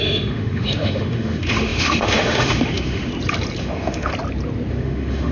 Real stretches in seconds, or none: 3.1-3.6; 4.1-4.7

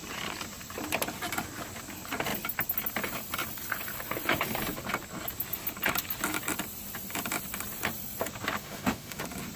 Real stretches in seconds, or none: 0.0-8.6; 9.2-9.6

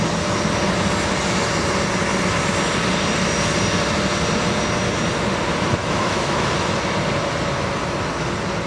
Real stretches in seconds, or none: 0.0-5.8; 6.7-8.7

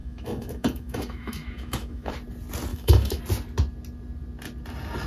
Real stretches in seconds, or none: 2.1-2.7; 3.2-5.1

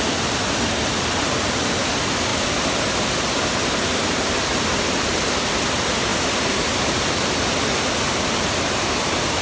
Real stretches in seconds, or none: 0.0-9.4